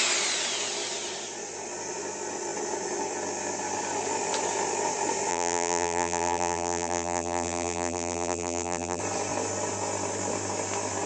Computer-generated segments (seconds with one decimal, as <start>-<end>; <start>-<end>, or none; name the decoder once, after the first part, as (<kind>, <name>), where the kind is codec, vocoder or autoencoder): 5.3-9.0 (vocoder, BigVGAN v2)

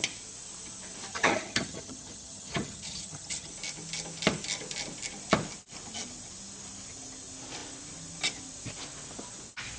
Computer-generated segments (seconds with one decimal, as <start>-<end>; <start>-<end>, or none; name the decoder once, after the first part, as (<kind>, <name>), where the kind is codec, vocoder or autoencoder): 1.1-3.5 (vocoder, HiFi-GAN)

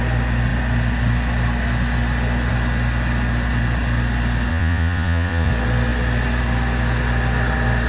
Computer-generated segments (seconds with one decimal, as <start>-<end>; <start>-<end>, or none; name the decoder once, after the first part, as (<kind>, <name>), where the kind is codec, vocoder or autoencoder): 4.5-5.5 (vocoder, Vocos)

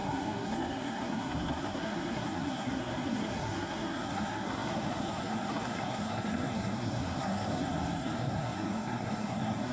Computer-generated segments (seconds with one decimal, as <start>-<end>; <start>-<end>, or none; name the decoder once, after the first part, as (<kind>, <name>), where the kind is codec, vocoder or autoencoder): 0.0-9.7 (codec, SNAC)